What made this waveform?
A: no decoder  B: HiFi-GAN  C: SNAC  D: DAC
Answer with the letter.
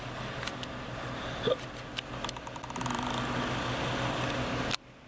A